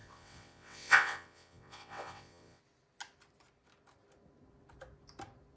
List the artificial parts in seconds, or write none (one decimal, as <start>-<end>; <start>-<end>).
0.0-2.6